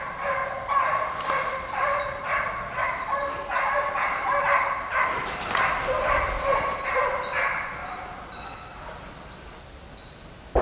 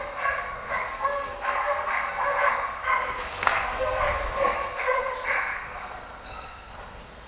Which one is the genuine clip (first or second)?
first